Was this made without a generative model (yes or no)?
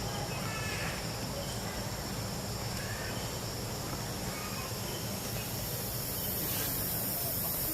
yes